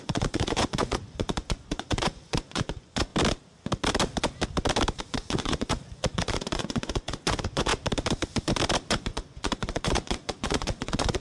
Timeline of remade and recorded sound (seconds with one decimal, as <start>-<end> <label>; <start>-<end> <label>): 0.0-3.1 remade; 3.1-5.0 recorded; 5.0-7.7 remade; 7.7-8.9 recorded; 8.9-11.2 remade